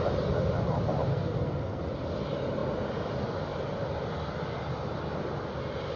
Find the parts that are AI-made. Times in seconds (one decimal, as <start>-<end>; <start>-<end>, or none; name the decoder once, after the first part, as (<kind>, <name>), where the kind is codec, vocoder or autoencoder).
1.1-1.8 (codec, SNAC)